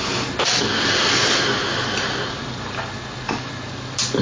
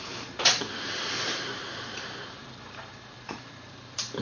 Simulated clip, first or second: second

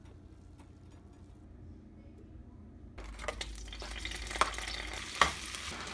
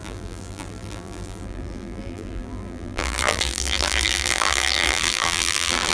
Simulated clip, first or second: second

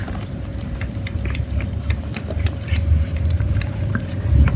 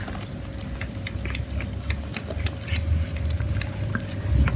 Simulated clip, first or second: first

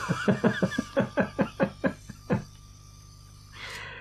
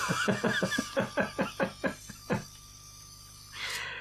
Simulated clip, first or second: first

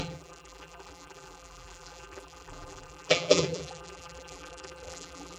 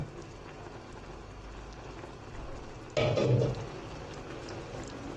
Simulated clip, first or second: first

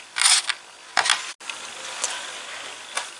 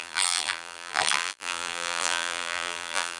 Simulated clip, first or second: second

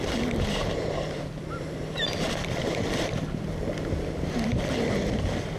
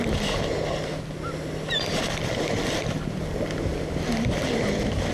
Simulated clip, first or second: first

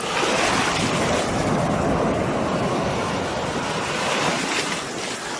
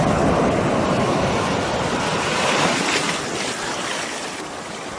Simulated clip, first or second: second